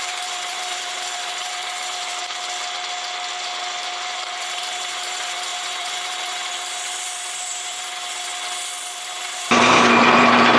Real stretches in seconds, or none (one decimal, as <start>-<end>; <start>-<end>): 2.1-3.8; 8.3-8.9